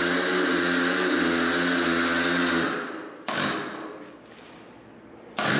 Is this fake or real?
real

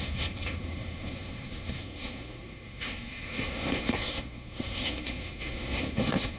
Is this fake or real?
fake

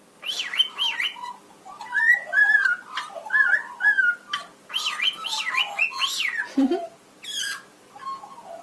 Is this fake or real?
real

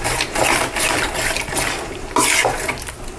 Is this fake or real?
real